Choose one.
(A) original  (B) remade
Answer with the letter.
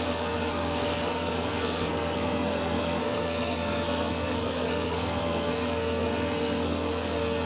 B